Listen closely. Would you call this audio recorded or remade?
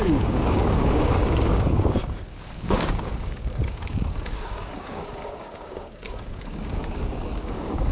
remade